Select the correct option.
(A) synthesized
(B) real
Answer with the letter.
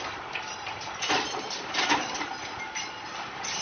B